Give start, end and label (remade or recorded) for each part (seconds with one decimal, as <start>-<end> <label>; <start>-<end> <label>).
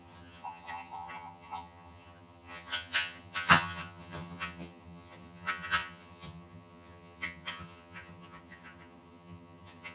0.0-9.9 remade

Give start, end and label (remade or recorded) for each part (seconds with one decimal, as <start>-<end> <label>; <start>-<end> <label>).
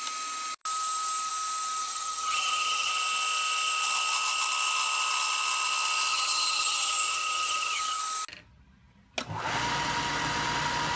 0.0-1.8 recorded; 1.8-2.9 remade; 2.9-6.1 recorded; 6.1-8.0 remade; 8.0-11.0 recorded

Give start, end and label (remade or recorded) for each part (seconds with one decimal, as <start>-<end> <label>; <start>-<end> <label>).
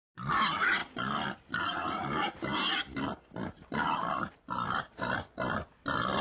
0.0-6.2 recorded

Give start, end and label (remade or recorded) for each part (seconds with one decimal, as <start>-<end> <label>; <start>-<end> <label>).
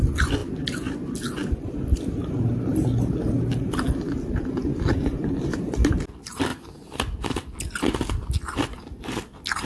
0.0-5.1 recorded; 5.1-5.9 remade; 5.9-9.7 recorded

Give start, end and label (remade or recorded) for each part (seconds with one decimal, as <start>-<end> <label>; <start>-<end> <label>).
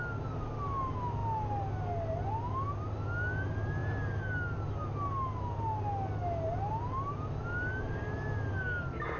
0.0-9.2 recorded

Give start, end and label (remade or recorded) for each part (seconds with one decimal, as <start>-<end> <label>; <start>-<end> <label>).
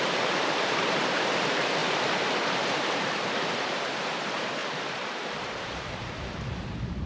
0.0-7.1 remade